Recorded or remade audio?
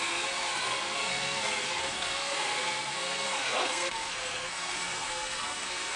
remade